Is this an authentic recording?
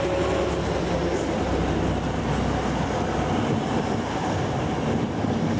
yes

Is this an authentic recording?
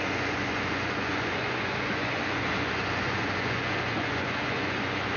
no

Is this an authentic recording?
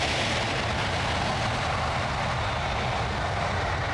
yes